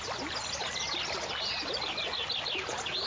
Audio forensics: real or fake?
real